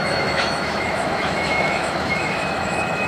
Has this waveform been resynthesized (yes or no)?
yes